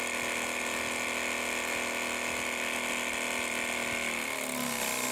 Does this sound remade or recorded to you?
recorded